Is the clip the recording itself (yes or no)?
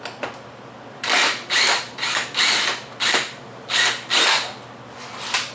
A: yes